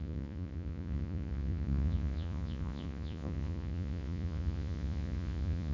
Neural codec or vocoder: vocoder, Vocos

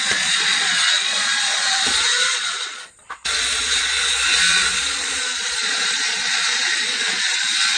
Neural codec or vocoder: vocoder, Vocos